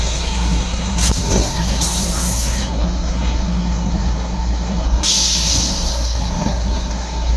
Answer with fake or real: fake